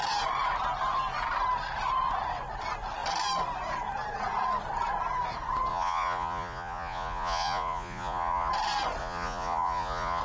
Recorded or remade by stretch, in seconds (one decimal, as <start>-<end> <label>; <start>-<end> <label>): 0.0-5.7 recorded; 5.7-8.5 remade; 8.5-9.0 recorded; 9.0-10.2 remade